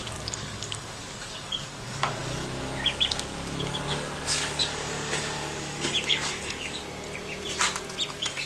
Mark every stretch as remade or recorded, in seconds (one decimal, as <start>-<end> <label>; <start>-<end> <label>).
0.0-6.8 remade; 6.8-8.1 recorded; 8.1-8.5 remade